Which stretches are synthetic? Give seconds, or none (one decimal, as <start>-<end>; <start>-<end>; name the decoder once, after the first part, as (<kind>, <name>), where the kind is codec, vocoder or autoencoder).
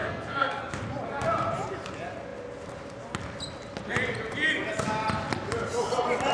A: 0.0-0.6 (codec, SNAC)